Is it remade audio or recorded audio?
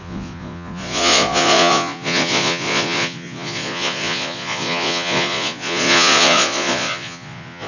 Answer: remade